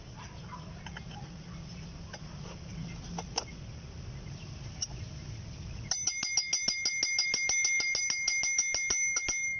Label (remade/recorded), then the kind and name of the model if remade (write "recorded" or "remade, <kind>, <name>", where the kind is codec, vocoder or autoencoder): recorded